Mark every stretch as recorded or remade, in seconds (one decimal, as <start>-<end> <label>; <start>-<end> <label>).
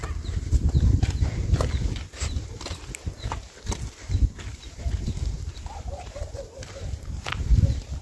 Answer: 0.0-4.5 recorded; 4.5-7.6 remade; 7.6-8.0 recorded